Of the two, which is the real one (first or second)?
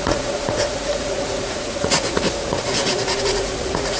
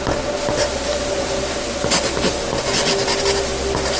second